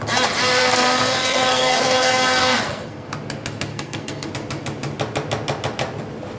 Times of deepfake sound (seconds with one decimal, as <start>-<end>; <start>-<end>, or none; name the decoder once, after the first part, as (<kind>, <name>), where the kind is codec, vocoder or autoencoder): 0.6-3.1 (codec, SNAC); 3.7-4.3